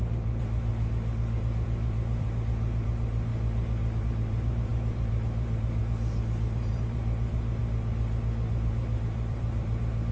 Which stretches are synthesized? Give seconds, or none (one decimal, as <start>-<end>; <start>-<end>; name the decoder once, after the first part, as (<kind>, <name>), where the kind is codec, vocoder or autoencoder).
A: 0.0-0.7 (vocoder, BigVGAN v2); 1.4-3.3; 4.0-7.6; 8.5-10.1